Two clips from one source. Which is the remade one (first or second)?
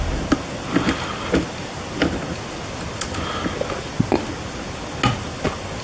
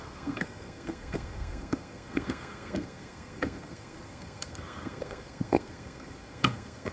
second